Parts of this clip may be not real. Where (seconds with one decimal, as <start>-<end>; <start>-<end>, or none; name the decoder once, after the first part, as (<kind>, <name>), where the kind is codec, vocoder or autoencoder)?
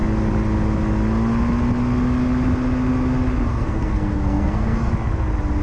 3.5-4.9 (codec, SNAC)